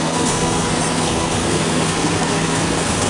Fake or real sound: fake